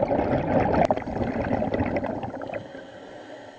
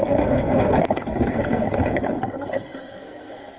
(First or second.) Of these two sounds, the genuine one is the first